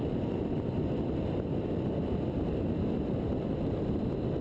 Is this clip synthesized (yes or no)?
no